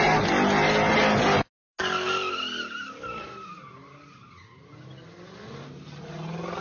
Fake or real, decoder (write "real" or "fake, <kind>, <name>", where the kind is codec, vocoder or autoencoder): real